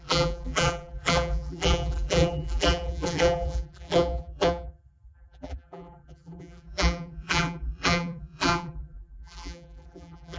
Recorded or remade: remade